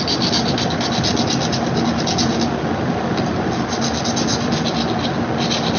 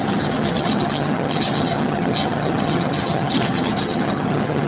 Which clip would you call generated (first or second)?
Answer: second